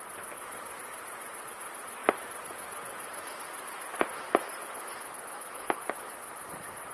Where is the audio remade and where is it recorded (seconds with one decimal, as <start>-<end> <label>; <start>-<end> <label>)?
0.0-6.9 recorded